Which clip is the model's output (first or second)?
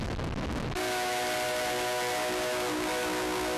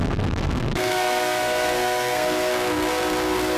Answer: second